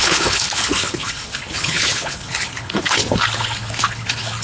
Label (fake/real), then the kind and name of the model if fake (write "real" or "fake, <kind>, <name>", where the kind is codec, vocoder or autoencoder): fake, codec, HILCodec